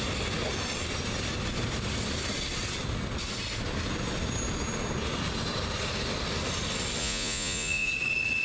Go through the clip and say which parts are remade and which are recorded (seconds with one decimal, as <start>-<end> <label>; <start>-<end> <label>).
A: 0.0-7.0 recorded; 7.0-7.9 remade; 7.9-8.4 recorded